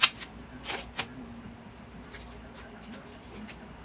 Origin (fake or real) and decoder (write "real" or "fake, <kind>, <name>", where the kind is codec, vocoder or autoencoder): real